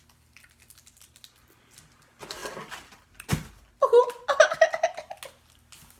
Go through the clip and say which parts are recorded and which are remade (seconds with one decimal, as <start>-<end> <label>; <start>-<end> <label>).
0.0-6.0 recorded